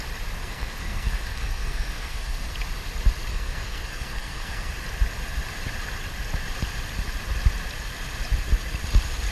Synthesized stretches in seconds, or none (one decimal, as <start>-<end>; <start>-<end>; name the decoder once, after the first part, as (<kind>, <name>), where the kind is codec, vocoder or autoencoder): 0.4-2.5 (codec, SNAC); 3.3-4.7